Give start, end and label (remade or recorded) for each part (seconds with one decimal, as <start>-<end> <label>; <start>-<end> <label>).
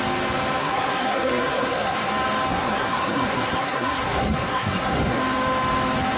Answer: 0.0-0.6 recorded; 0.6-2.1 remade; 2.1-2.5 recorded; 2.5-5.2 remade; 5.2-6.2 recorded